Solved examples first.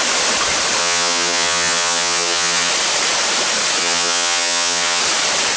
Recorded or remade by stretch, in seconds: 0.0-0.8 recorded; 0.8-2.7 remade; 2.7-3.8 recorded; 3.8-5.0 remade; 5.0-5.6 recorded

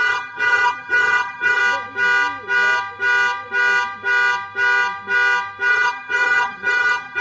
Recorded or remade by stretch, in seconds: 0.0-1.6 remade; 1.6-5.7 recorded; 5.7-7.2 remade

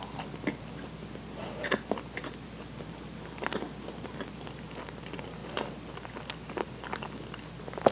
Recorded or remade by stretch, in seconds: 0.0-7.9 recorded

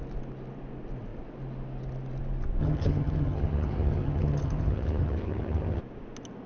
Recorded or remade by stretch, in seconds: 0.0-2.6 recorded; 2.6-5.8 remade; 5.8-6.5 recorded

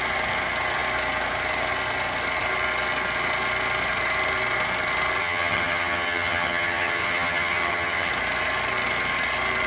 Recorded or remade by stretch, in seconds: 0.0-5.2 recorded; 5.2-8.1 remade; 8.1-9.7 recorded

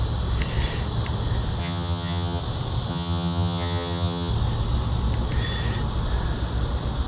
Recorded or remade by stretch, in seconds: 0.0-1.6 recorded; 1.6-2.4 remade; 2.4-2.9 recorded; 2.9-4.3 remade; 4.3-7.1 recorded

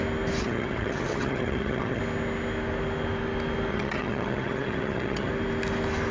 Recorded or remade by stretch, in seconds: 0.0-0.4 recorded; 0.4-2.0 remade; 2.0-3.7 recorded; 3.7-5.3 remade; 5.3-6.1 recorded